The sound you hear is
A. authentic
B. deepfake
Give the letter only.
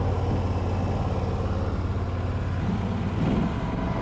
A